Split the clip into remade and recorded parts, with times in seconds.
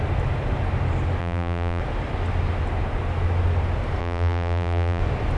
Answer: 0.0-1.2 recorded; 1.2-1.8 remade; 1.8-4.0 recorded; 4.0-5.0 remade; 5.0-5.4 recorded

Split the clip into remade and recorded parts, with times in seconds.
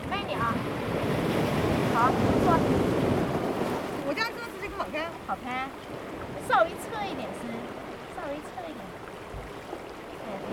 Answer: 0.0-1.0 remade; 1.0-10.5 recorded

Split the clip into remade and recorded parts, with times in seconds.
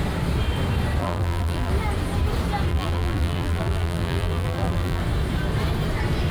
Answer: 0.0-1.0 recorded; 1.0-1.7 remade; 1.7-2.7 recorded; 2.7-5.0 remade; 5.0-6.3 recorded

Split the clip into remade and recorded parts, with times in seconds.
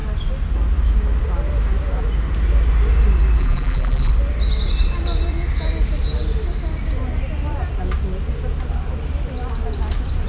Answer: 0.0-3.4 recorded; 3.4-4.1 remade; 4.1-10.3 recorded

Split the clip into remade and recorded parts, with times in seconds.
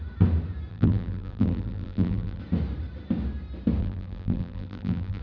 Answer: 0.0-0.7 recorded; 0.7-2.4 remade; 2.4-3.8 recorded; 3.8-5.2 remade